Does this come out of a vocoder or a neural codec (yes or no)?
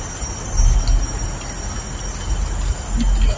no